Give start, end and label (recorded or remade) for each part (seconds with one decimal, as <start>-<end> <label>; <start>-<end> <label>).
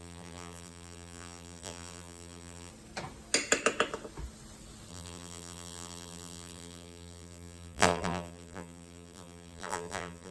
0.0-2.7 remade; 2.7-4.9 recorded; 4.9-10.3 remade